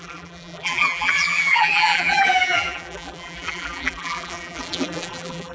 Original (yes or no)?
no